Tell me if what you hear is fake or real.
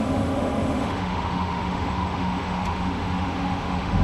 fake